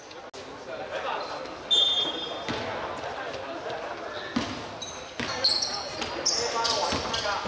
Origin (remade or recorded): recorded